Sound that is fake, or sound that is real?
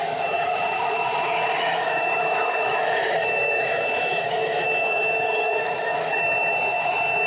fake